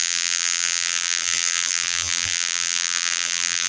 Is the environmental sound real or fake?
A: fake